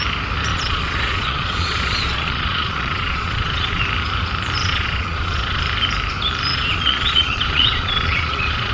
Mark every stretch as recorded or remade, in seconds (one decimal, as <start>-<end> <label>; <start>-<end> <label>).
0.0-0.5 recorded; 0.5-3.8 remade; 3.8-4.6 recorded; 4.6-5.6 remade; 5.6-6.5 recorded; 6.5-8.7 remade